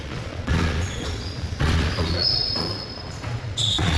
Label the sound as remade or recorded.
remade